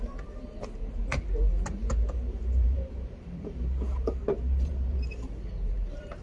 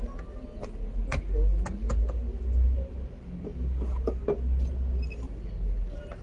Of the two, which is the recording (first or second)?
second